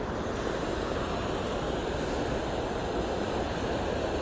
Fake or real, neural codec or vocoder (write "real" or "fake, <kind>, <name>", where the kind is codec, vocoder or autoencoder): real